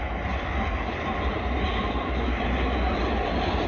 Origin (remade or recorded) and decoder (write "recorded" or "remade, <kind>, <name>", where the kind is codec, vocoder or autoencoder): recorded